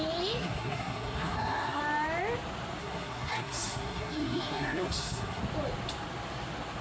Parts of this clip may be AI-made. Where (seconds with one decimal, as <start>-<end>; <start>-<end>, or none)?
0.4-1.8; 2.8-5.4